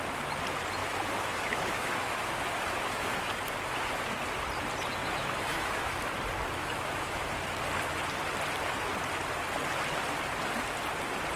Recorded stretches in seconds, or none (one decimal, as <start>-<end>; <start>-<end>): 0.0-0.8; 3.3-5.0; 6.0-6.6; 7.3-11.4